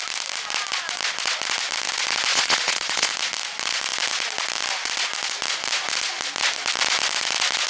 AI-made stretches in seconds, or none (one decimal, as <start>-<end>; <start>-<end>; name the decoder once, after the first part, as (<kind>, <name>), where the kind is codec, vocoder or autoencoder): 2.3-3.1 (vocoder, Vocos)